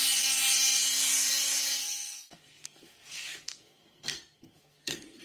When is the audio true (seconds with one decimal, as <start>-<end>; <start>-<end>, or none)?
0.0-1.8